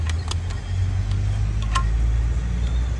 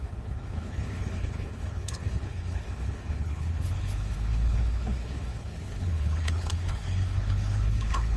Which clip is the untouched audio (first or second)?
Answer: first